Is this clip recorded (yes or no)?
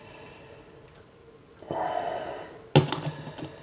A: yes